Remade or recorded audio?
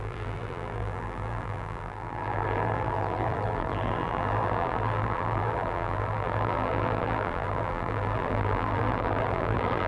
remade